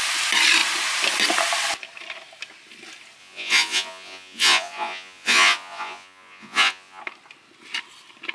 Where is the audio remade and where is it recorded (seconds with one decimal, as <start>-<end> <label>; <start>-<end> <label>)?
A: 0.0-3.2 recorded; 3.2-7.0 remade; 7.0-8.3 recorded